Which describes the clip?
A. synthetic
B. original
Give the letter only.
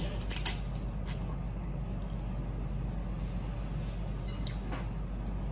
B